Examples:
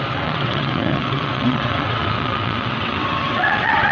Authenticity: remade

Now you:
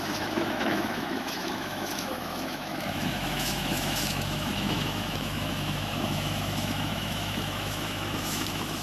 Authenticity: remade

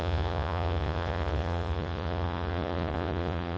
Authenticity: remade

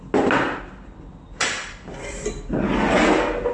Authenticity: recorded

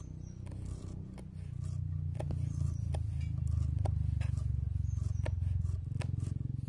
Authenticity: recorded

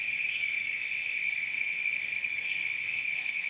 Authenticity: remade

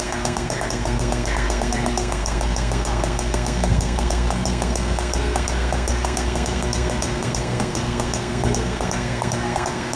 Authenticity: remade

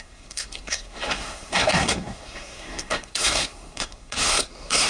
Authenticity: remade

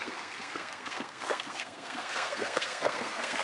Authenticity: remade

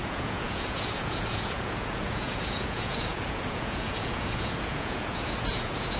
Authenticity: remade